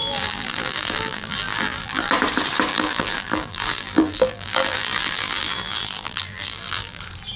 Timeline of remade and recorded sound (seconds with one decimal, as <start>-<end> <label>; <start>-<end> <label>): 0.0-2.1 remade; 2.1-2.7 recorded; 2.7-7.0 remade; 7.0-7.4 recorded